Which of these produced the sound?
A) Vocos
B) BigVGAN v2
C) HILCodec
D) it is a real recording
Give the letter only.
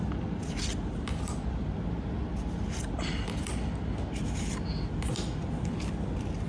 D